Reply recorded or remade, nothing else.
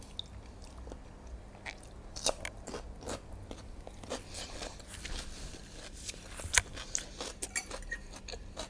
recorded